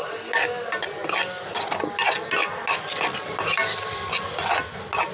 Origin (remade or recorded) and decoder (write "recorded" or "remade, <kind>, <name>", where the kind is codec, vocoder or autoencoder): recorded